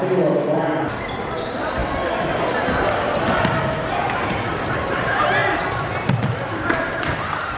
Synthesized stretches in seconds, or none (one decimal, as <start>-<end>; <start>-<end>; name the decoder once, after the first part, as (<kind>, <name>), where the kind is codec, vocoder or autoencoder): 0.0-1.8 (vocoder, BigVGAN v2); 4.0-7.6